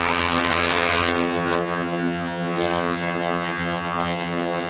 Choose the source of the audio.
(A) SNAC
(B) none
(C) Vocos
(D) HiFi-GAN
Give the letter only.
D